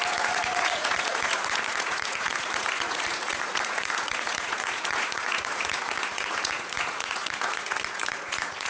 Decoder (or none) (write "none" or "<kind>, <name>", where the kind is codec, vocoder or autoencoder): vocoder, Vocos